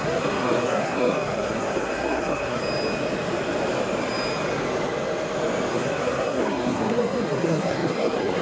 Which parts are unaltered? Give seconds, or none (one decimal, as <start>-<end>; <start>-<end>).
2.6-5.7